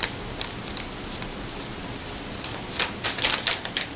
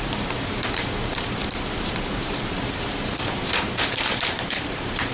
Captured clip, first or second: first